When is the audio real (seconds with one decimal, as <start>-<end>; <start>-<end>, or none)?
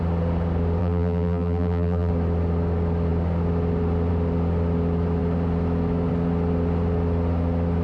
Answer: 0.0-0.8; 2.1-7.8